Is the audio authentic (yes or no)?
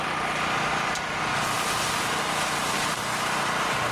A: no